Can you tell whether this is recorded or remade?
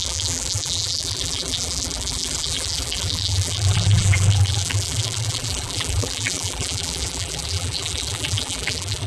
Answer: remade